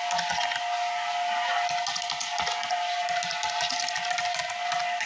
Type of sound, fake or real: real